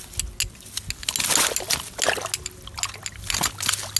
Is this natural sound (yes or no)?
yes